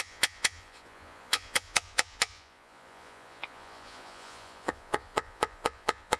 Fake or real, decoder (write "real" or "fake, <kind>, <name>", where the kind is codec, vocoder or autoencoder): fake, vocoder, Vocos